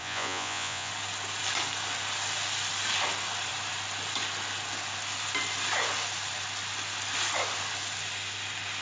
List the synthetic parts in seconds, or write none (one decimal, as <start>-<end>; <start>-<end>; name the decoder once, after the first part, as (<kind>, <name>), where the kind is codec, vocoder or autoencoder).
0.0-0.9 (vocoder, Vocos)